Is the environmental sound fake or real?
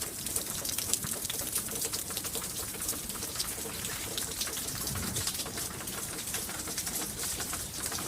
fake